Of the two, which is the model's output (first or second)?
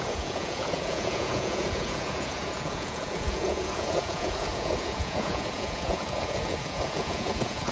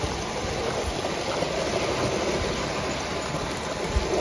first